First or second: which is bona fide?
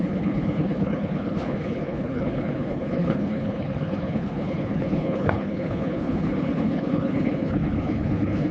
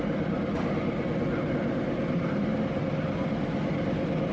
second